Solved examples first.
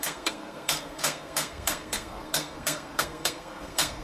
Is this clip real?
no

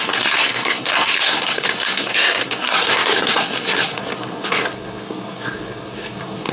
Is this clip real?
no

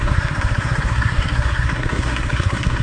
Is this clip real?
no